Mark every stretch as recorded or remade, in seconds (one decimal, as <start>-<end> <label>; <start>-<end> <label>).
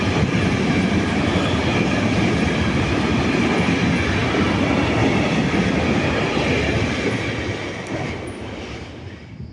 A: 0.0-9.5 recorded